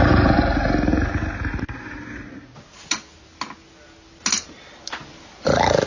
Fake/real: real